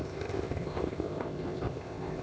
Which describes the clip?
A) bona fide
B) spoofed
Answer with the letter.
B